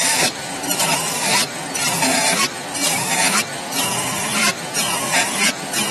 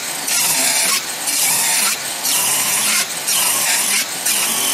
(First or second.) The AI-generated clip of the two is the second